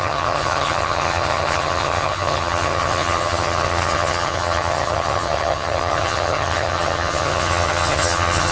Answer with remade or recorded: remade